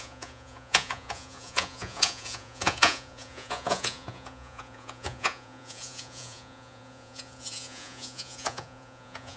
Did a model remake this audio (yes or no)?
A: yes